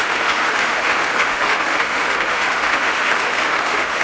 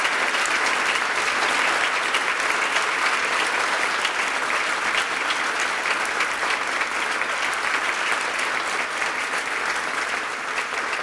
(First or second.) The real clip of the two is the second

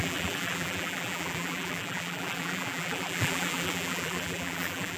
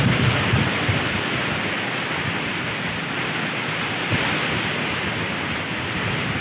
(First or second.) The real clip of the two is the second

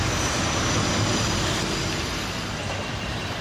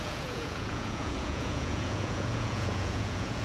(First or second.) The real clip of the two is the first